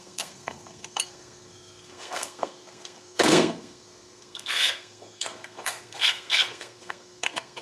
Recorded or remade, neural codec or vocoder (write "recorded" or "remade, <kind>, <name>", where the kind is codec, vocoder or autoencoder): remade, codec, SNAC